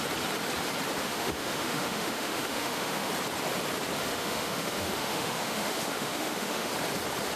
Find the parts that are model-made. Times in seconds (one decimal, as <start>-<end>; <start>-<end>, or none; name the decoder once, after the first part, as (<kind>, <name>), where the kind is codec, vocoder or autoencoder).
1.0-3.1 (autoencoder, DAC-VAE); 4.1-6.7